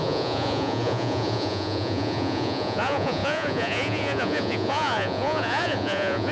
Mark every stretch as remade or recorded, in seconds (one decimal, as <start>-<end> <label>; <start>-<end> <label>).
0.0-6.3 remade